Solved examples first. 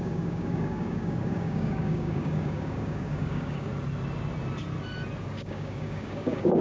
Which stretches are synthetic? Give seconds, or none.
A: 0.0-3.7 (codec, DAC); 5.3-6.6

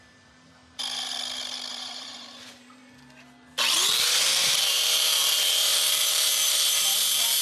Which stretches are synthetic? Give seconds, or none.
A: 0.0-0.8 (vocoder, BigVGAN v2); 1.7-2.8; 4.0-7.4